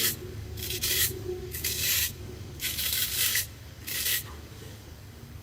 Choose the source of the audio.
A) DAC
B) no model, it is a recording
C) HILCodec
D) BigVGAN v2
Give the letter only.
A